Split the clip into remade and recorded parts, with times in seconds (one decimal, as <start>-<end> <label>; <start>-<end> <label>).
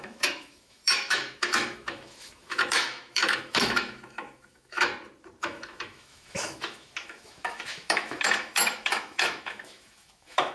0.0-4.9 remade; 4.9-5.4 recorded; 5.4-10.5 remade